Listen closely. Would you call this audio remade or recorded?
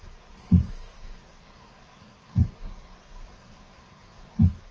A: remade